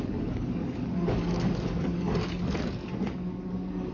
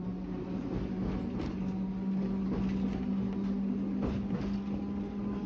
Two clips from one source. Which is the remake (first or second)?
first